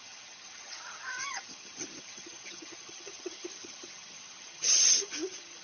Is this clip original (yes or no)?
no